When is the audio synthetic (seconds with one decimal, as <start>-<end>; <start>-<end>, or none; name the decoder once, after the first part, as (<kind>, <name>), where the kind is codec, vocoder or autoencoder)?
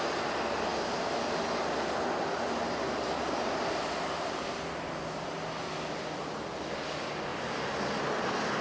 none